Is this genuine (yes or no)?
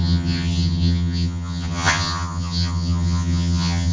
no